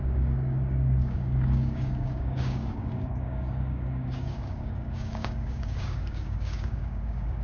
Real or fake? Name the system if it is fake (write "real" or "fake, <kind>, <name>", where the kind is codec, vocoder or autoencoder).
fake, codec, DAC